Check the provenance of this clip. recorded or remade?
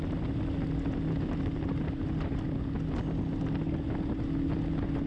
recorded